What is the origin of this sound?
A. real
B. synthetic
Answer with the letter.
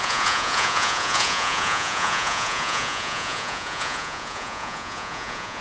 B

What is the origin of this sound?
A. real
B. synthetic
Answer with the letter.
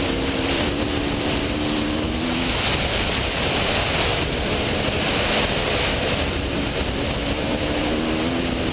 A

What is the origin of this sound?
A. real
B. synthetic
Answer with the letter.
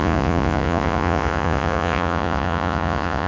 B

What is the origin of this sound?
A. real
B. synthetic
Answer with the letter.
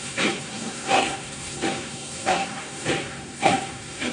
B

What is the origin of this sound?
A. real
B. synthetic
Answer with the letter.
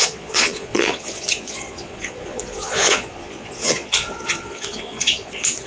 B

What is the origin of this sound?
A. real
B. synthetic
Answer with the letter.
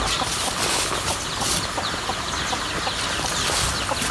A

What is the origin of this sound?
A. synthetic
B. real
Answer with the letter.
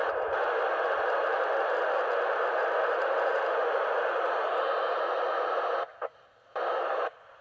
B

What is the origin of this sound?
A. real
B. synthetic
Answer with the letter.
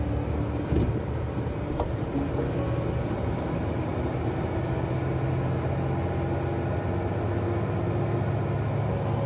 A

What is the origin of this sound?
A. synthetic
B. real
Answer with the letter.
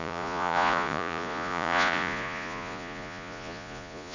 A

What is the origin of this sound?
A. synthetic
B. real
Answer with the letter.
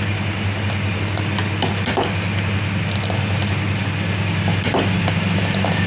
B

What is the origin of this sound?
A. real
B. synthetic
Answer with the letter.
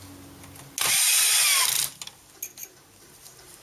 A